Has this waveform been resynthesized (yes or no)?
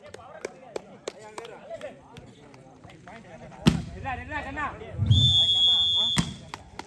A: no